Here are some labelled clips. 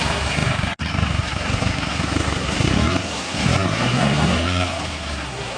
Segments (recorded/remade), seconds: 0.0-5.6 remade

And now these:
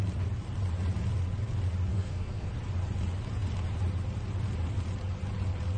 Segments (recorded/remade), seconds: 0.0-1.9 recorded; 1.9-2.5 remade; 2.5-5.8 recorded